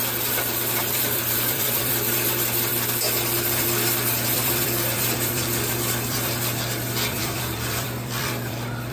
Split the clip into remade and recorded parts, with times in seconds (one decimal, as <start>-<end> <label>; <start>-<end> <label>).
0.0-1.0 recorded; 1.0-2.7 remade; 2.7-3.6 recorded; 3.6-8.9 remade